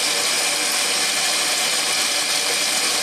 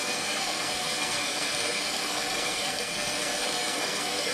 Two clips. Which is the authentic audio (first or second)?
first